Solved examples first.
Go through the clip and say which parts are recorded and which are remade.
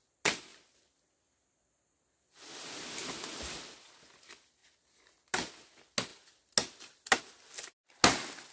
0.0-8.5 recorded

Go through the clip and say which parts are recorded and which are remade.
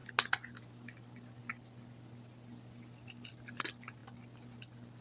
0.0-0.6 recorded; 0.6-1.5 remade; 1.5-3.3 recorded; 3.3-5.0 remade